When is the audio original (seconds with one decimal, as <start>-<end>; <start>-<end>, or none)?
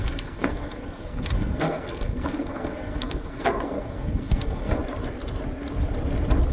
4.8-6.5